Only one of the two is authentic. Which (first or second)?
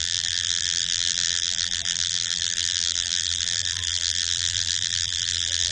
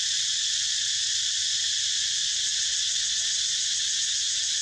second